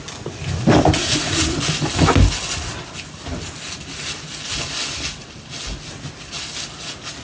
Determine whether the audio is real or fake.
real